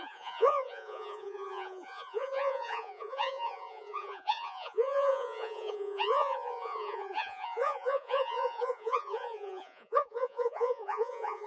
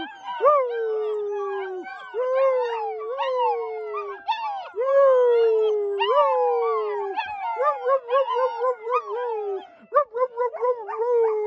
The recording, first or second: second